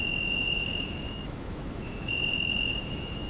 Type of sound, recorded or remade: remade